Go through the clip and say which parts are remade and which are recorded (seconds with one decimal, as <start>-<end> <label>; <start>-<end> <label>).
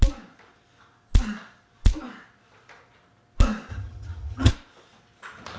0.0-3.7 recorded; 3.7-4.5 remade; 4.5-5.6 recorded